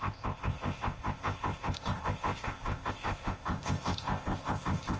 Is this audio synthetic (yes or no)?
yes